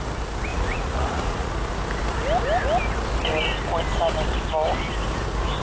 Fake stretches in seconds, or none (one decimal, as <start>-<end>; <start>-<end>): 0.5-1.5